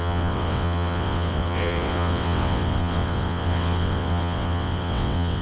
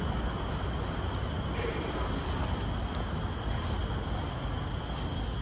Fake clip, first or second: first